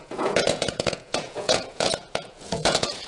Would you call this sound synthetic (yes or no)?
yes